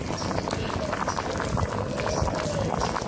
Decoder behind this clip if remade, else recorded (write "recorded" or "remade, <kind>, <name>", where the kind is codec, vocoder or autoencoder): recorded